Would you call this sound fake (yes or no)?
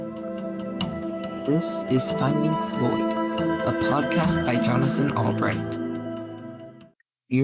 yes